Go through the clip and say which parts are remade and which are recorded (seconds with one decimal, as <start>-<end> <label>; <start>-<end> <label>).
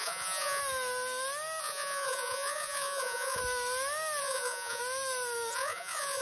0.0-0.6 remade; 0.6-1.6 recorded; 1.6-3.4 remade; 3.4-4.2 recorded; 4.2-4.8 remade; 4.8-5.5 recorded; 5.5-6.2 remade